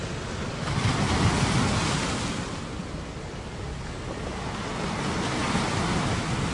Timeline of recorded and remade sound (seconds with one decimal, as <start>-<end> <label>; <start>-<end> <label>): 0.0-6.5 recorded